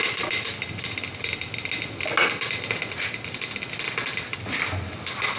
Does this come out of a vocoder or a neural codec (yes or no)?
no